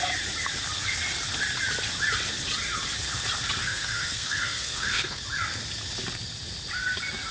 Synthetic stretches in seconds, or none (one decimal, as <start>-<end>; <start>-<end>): 3.6-5.2